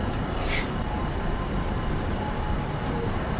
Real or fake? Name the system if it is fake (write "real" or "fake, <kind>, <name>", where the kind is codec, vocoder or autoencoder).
real